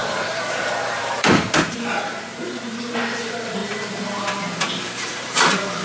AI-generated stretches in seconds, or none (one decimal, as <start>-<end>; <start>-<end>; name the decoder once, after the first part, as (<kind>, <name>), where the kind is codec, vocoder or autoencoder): 0.0-5.8 (vocoder, BigVGAN v2)